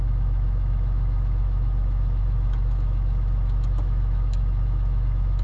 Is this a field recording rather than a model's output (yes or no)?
no